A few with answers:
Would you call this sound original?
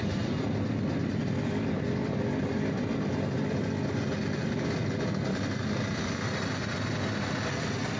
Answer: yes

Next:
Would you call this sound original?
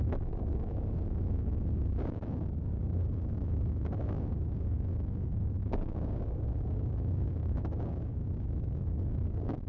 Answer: no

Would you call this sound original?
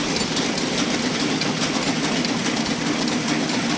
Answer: yes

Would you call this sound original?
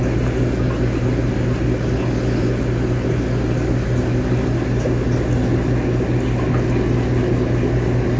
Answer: yes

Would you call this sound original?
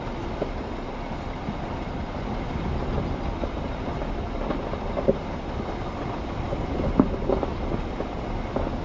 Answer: yes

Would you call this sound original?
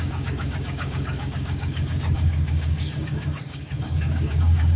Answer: no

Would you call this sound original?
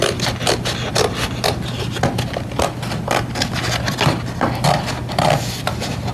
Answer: yes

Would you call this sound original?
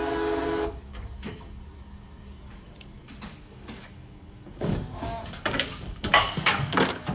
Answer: no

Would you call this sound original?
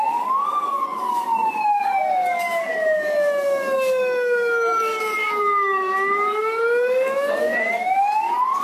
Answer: no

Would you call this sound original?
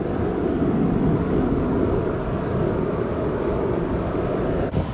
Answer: no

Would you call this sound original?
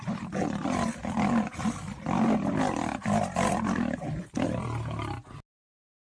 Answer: yes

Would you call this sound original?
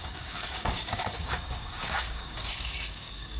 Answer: no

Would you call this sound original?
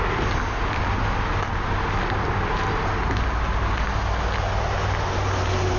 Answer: yes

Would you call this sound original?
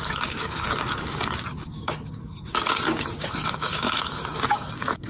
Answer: no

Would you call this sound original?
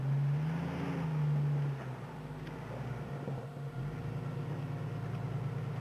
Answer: yes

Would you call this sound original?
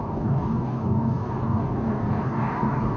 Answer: no